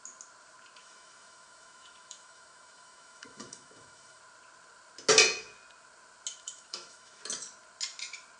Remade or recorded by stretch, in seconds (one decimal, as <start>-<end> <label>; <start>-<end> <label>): 0.0-0.8 recorded; 0.8-4.2 remade; 4.2-6.3 recorded; 6.3-7.2 remade; 7.2-8.4 recorded